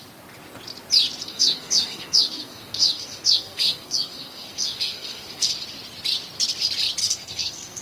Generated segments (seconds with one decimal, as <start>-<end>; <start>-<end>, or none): 1.2-5.5; 7.0-7.8